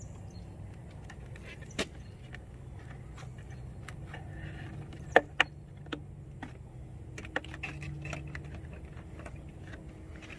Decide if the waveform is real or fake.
real